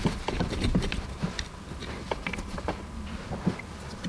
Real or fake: real